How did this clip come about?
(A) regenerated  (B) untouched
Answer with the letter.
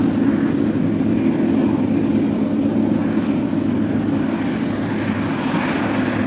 B